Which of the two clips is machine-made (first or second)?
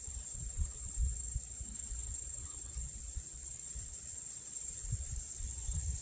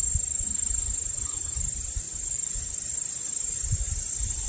first